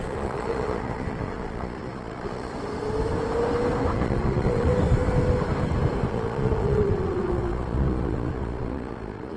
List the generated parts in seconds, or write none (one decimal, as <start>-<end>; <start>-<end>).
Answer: 0.0-2.5; 3.9-4.7; 6.1-9.4